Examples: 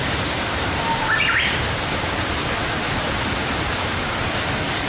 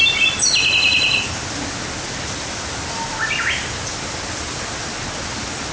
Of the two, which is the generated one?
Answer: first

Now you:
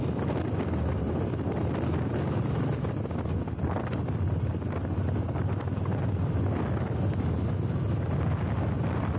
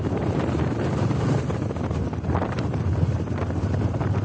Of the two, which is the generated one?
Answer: second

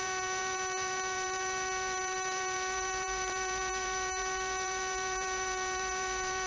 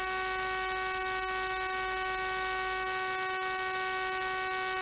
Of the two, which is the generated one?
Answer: first